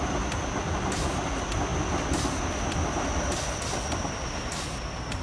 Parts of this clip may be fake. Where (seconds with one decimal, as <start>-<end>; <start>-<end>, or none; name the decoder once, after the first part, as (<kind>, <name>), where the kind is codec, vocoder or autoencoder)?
none